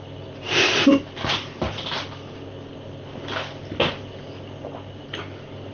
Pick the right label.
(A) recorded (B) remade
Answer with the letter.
A